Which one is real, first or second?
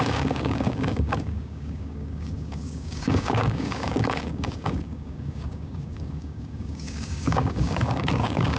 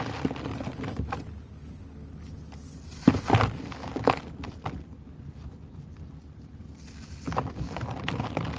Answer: second